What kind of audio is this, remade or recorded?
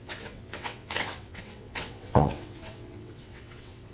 remade